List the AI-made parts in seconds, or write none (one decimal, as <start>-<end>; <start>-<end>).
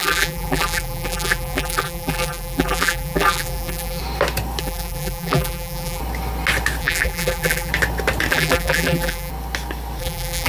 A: 0.0-4.0; 4.6-6.0; 6.8-7.7; 8.3-9.3; 10.0-10.5